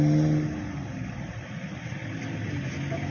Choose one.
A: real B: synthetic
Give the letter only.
A